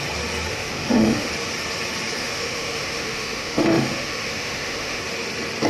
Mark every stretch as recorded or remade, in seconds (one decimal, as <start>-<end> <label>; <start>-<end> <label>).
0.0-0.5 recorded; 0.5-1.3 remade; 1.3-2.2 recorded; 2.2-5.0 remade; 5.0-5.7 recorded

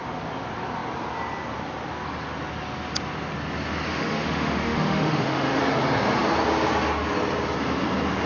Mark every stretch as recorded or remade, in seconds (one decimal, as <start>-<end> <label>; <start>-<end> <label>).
0.0-3.9 recorded; 3.9-5.6 remade; 5.6-8.3 recorded

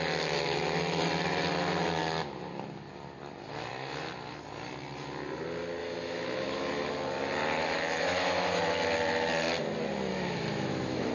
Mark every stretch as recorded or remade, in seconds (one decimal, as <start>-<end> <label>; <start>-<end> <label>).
0.0-5.8 recorded; 5.8-6.9 remade; 6.9-7.6 recorded; 7.6-8.6 remade; 8.6-10.1 recorded; 10.1-11.1 remade

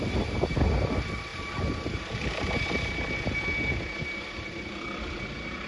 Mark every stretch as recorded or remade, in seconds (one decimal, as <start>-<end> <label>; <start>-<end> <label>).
0.0-5.7 recorded